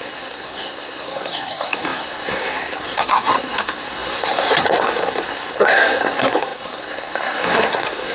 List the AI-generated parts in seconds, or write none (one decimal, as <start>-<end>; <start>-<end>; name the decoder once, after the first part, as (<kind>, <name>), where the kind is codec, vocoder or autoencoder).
0.0-8.1 (codec, SNAC)